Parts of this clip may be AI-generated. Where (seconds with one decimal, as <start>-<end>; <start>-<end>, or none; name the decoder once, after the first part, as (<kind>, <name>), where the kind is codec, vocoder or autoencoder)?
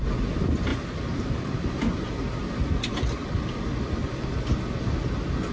0.7-2.7 (vocoder, BigVGAN v2); 3.2-5.0